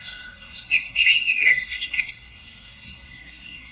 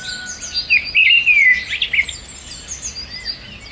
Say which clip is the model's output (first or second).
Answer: first